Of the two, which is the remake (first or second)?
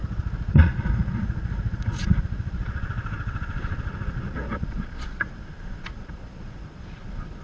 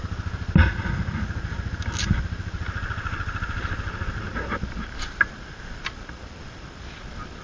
first